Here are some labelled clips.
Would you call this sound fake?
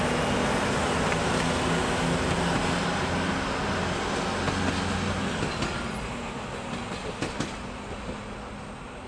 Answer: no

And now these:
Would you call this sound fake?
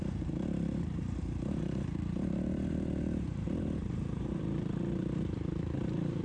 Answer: yes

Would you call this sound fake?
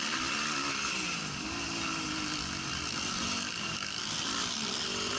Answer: no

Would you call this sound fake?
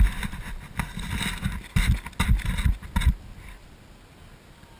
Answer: no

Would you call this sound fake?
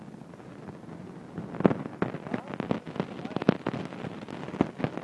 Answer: no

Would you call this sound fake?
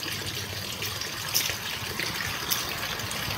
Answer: no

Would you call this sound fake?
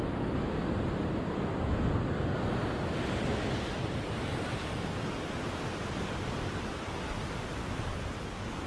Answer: no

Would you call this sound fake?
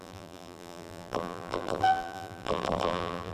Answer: yes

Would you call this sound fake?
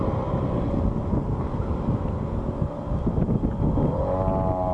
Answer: no